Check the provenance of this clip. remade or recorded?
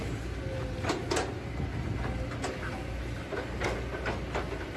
recorded